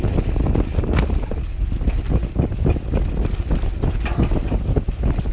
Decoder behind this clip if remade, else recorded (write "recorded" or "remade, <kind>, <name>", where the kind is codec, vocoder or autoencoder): recorded